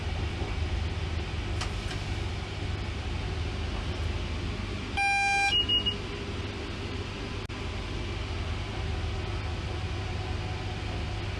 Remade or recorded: recorded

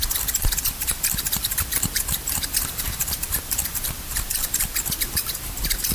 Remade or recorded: remade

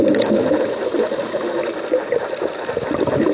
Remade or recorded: recorded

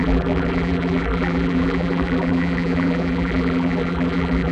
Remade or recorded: remade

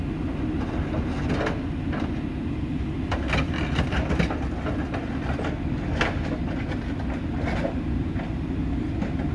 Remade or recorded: recorded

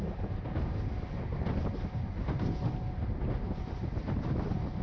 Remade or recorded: recorded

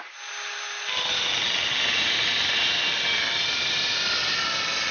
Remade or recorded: recorded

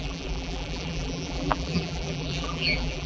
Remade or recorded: remade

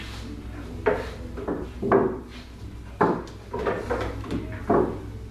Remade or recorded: recorded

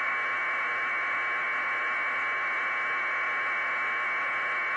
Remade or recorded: recorded